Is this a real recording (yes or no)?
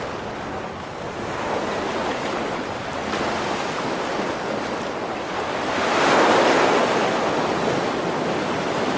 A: yes